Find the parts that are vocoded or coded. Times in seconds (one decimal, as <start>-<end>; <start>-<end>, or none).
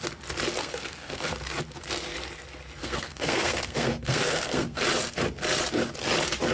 0.6-1.3; 2.8-4.8